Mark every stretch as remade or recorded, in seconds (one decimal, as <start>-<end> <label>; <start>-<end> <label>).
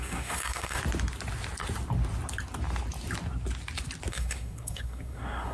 0.0-0.8 remade; 0.8-4.1 recorded; 4.1-5.5 remade